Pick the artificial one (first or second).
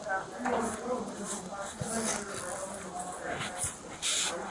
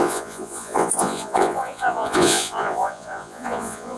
second